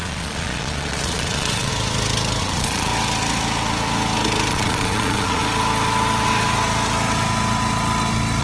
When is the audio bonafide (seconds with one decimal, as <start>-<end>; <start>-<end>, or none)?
1.7-2.4; 2.9-4.5; 5.4-8.4